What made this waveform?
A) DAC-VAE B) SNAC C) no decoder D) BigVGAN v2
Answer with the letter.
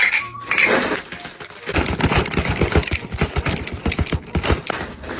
D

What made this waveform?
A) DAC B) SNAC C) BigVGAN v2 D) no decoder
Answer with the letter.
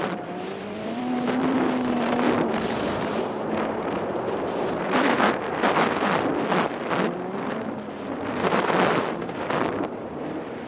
C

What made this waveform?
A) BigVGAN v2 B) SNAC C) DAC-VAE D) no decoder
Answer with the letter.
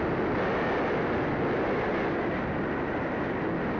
D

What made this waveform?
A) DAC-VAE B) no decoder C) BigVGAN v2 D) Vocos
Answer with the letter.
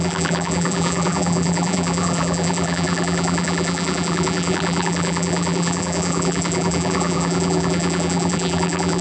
C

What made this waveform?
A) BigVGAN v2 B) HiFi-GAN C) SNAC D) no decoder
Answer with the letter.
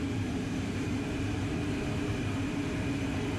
A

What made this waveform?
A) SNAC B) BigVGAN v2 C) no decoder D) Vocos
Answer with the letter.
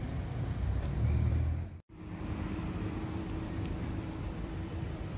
B